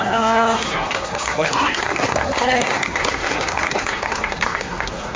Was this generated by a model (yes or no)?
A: yes